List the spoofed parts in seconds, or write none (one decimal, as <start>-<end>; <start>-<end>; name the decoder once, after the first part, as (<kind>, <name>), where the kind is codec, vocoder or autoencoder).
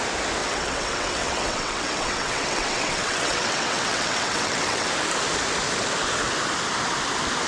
0.4-4.9 (vocoder, WaveNeXt)